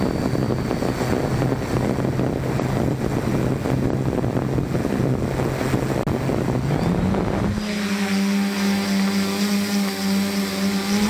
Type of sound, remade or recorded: recorded